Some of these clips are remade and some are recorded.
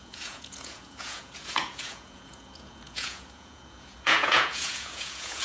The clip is remade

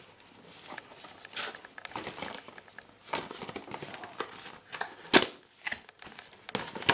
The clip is recorded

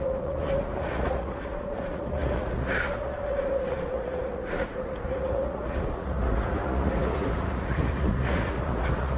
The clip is remade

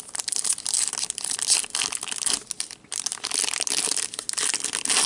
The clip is recorded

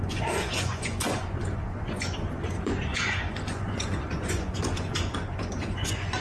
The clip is remade